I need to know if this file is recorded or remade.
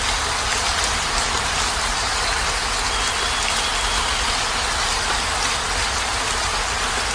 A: recorded